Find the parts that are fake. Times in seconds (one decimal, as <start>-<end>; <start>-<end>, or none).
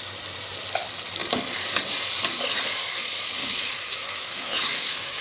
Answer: 3.4-5.2